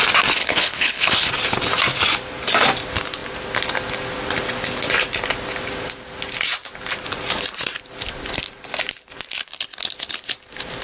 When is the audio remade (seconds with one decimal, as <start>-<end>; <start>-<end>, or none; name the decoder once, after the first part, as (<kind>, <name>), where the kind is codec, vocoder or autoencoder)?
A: 0.4-1.3 (codec, HILCodec)